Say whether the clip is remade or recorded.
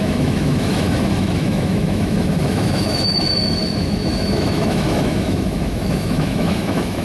remade